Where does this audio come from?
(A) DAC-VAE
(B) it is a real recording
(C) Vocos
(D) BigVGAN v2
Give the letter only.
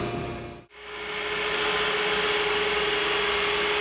B